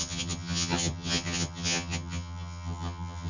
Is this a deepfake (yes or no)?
yes